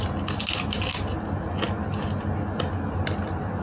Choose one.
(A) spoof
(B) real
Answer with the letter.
B